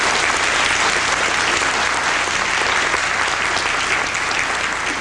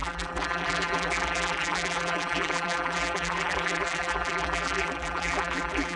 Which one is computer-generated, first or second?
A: second